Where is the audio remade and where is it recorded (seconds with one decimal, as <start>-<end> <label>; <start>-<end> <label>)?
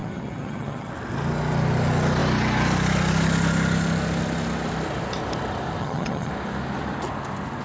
0.0-0.9 remade; 0.9-5.8 recorded; 5.8-6.3 remade; 6.3-7.6 recorded